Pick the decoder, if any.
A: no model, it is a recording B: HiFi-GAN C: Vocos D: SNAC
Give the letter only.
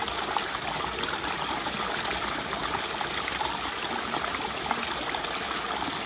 A